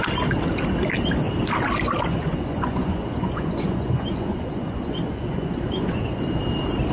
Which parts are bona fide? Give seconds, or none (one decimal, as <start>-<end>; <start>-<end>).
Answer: 0.0-2.1; 6.2-6.9